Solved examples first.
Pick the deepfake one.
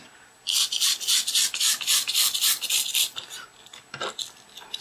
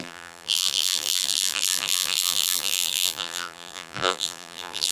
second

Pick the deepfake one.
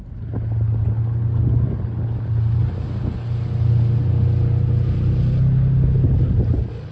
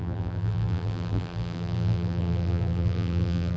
second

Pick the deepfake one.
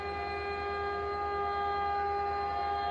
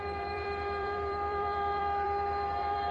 second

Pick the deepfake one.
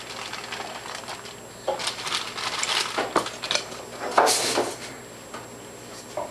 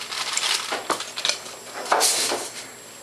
second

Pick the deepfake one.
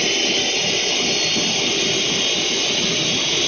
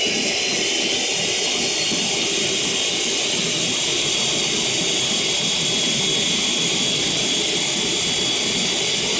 second